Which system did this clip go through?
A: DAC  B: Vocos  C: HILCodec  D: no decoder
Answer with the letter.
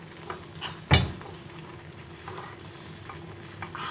D